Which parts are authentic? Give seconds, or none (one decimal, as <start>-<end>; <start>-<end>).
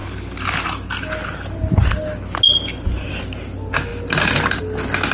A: 0.0-5.1